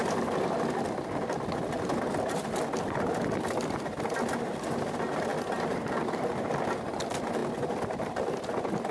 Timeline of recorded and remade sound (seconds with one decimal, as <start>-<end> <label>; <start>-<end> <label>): 0.0-8.9 recorded